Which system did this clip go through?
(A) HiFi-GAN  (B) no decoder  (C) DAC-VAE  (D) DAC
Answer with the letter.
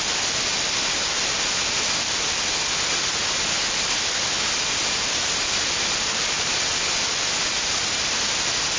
B